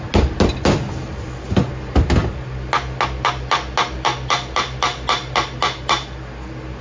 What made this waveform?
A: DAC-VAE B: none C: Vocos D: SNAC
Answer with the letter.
B